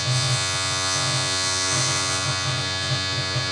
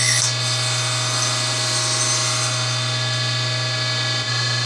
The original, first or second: second